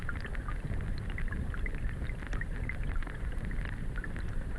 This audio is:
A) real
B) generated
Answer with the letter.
A